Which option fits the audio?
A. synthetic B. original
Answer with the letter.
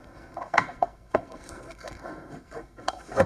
A